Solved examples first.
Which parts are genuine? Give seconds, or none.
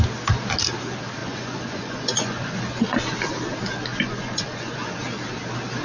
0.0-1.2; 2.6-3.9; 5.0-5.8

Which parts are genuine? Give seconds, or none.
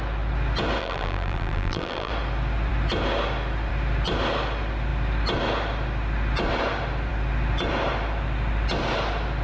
0.0-0.8; 2.1-9.4